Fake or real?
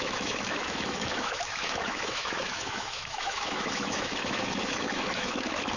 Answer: fake